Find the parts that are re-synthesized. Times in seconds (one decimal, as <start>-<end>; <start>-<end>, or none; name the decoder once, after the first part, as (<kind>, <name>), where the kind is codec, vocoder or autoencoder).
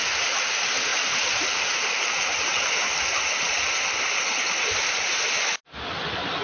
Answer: none